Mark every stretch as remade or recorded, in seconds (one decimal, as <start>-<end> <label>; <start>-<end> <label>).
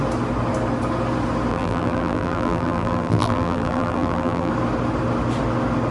0.0-1.5 recorded; 1.5-4.5 remade; 4.5-5.9 recorded